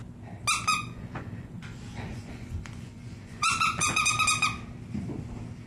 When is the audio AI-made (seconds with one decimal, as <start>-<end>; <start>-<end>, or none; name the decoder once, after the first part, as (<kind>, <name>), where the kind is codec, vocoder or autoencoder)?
0.7-4.1 (vocoder, Vocos)